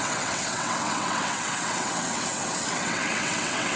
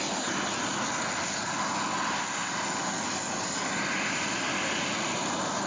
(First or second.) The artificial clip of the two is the first